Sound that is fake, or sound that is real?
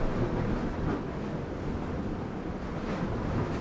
real